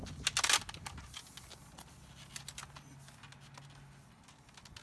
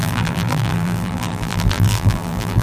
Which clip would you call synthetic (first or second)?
second